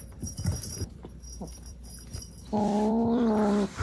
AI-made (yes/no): yes